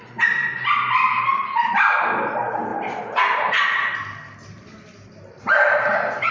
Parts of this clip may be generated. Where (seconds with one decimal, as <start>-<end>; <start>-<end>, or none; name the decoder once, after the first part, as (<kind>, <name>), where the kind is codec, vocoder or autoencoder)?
none